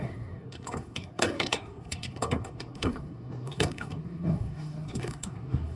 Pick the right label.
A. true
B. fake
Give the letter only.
B